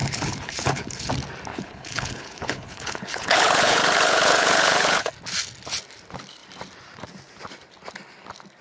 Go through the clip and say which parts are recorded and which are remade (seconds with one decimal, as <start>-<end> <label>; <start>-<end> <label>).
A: 0.0-1.1 remade; 1.1-1.5 recorded; 1.5-5.1 remade; 5.1-8.6 recorded